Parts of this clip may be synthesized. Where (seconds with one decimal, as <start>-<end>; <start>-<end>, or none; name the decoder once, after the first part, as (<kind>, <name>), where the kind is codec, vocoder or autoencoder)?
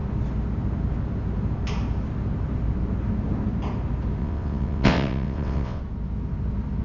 4.2-5.8 (vocoder, WaveNeXt)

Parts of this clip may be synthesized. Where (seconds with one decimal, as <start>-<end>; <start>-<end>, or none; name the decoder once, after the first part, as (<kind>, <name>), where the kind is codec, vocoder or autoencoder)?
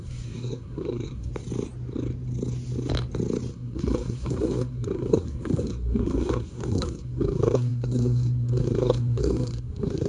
0.0-1.3 (codec, SNAC); 3.5-10.1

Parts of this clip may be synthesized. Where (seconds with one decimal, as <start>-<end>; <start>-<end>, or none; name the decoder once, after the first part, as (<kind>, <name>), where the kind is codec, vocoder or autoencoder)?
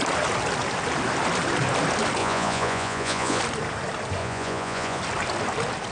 2.2-3.4 (vocoder, Vocos); 4.2-5.0